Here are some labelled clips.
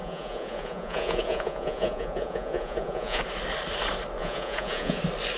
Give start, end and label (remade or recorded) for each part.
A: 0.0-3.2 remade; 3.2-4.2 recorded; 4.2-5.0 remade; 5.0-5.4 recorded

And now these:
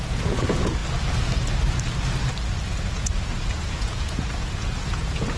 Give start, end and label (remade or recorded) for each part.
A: 0.0-0.8 remade; 0.8-2.6 recorded; 2.6-5.4 remade

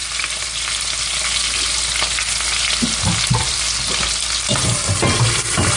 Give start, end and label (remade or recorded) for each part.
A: 0.0-5.8 recorded